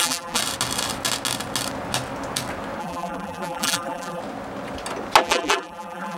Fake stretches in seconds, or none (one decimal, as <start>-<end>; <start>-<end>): 0.0-0.4; 2.8-4.2; 5.2-6.2